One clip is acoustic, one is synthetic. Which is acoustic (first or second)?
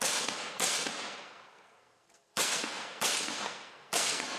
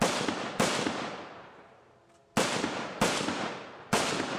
second